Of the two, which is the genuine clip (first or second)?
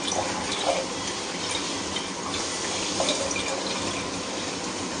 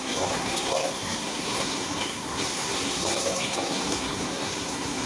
first